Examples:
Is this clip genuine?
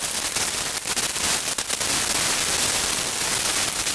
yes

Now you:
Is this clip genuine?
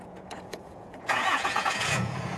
no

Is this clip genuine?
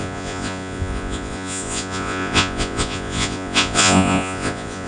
no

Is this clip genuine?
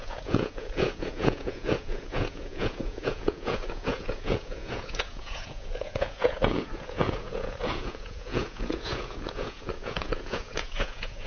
no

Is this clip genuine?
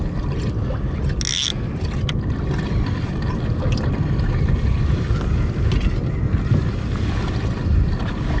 yes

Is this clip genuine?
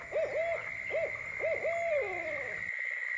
yes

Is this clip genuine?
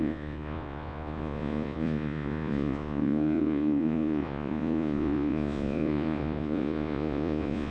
no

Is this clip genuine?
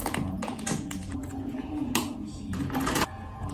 no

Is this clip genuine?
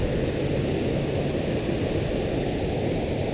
yes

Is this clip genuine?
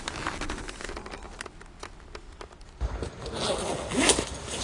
yes